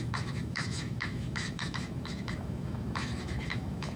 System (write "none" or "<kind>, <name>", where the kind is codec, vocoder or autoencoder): autoencoder, DAC-VAE